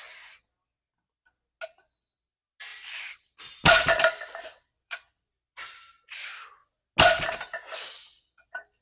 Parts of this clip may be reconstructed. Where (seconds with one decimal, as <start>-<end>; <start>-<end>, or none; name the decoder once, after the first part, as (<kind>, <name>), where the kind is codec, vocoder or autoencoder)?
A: 2.7-6.0 (vocoder, BigVGAN v2)